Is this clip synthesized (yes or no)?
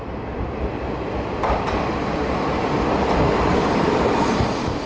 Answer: no